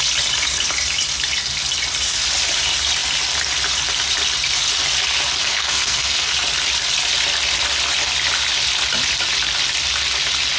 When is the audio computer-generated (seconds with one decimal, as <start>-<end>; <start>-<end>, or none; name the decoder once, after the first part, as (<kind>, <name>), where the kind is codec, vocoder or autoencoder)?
5.4-6.3 (codec, SNAC)